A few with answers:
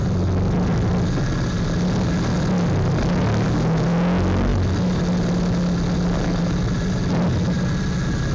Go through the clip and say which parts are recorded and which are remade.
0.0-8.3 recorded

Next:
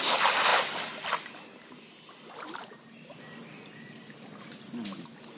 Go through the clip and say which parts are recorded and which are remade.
0.0-5.4 recorded

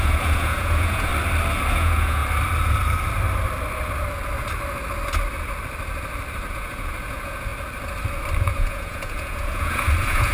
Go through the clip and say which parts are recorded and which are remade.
0.0-1.1 remade; 1.1-1.7 recorded; 1.7-2.2 remade; 2.2-6.5 recorded; 6.5-7.5 remade; 7.5-8.4 recorded; 8.4-10.3 remade

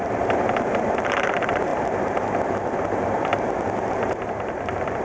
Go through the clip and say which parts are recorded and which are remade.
0.0-5.0 remade

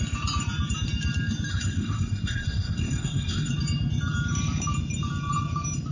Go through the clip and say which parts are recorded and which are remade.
0.0-1.5 recorded; 1.5-3.5 remade; 3.5-5.9 recorded

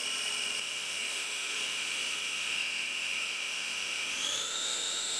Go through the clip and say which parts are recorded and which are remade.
0.0-0.6 recorded; 0.6-5.2 remade

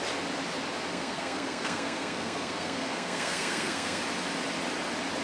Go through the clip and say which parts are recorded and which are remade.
0.0-0.9 recorded; 0.9-4.0 remade; 4.0-5.2 recorded

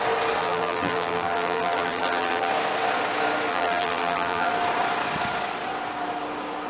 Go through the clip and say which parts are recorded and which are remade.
0.0-0.4 recorded; 0.4-2.5 remade; 2.5-3.5 recorded; 3.5-4.5 remade; 4.5-6.7 recorded